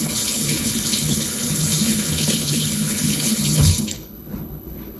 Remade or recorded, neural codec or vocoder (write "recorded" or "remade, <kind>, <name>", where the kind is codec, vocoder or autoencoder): remade, codec, HILCodec